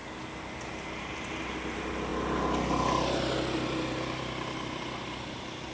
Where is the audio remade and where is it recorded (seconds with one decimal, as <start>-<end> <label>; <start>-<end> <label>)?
0.0-5.7 recorded

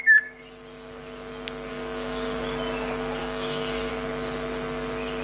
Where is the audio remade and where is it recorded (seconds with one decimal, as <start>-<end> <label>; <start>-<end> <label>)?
0.0-1.7 recorded; 1.7-2.4 remade; 2.4-3.2 recorded; 3.2-3.9 remade; 3.9-5.2 recorded

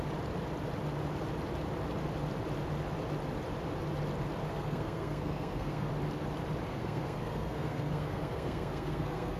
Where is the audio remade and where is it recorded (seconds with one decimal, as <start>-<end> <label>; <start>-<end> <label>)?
0.0-4.5 recorded; 4.5-5.9 remade; 5.9-6.7 recorded; 6.7-9.4 remade

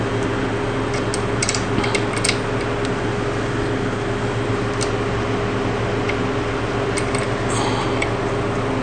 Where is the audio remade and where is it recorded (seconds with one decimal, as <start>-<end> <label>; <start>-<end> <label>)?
0.0-8.8 recorded

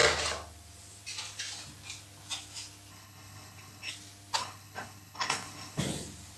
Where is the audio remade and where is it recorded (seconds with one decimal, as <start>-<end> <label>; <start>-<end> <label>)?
0.0-2.9 recorded; 2.9-3.9 remade; 3.9-4.4 recorded; 4.4-5.8 remade; 5.8-6.4 recorded